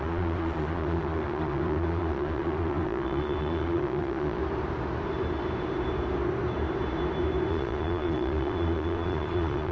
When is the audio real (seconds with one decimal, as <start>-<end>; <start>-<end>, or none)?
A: 4.4-7.5

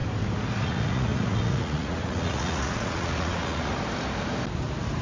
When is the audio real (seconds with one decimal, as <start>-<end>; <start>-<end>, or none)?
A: 0.0-0.6; 3.7-5.0

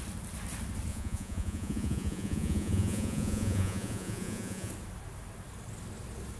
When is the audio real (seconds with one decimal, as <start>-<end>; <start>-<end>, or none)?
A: 0.0-0.9; 4.7-6.4

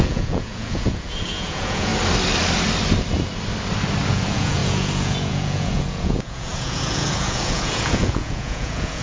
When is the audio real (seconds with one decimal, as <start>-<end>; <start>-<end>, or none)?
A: 1.9-4.1

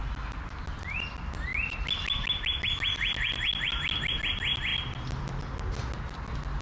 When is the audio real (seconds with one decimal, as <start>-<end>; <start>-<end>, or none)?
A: 0.0-6.6

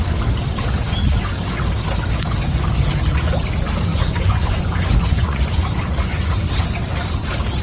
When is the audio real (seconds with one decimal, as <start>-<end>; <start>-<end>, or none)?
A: 0.0-3.9; 6.5-7.6

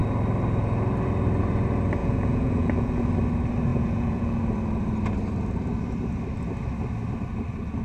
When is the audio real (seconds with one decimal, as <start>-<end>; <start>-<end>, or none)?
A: 0.0-2.0; 3.1-3.7; 4.4-7.8

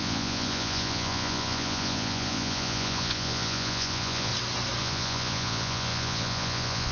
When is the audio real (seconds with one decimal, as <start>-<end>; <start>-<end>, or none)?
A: 4.3-4.8